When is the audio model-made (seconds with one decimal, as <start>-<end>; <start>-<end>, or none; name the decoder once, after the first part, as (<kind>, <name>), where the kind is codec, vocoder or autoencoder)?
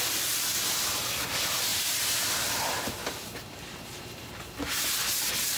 1.7-2.8 (vocoder, BigVGAN v2)